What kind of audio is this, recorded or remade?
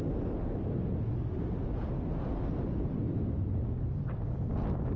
recorded